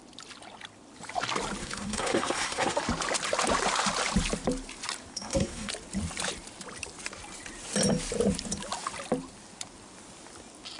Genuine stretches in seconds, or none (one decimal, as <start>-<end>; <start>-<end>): 0.0-1.6; 2.8-5.1; 5.7-10.8